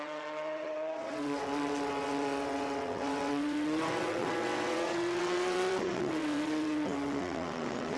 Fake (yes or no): yes